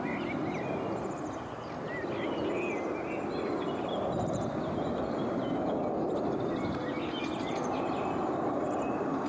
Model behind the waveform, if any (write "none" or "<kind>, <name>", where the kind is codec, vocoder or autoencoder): none